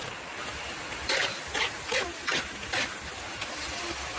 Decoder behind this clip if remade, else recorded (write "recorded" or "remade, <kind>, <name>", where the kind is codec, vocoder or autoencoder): recorded